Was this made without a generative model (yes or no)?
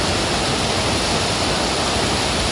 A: yes